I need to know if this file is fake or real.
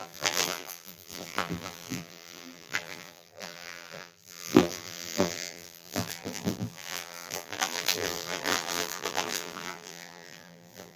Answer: fake